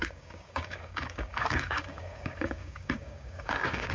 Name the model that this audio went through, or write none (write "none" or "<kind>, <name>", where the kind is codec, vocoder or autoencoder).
codec, DAC